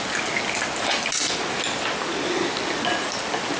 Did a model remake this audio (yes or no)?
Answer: no